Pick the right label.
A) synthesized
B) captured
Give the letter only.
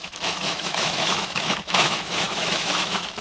A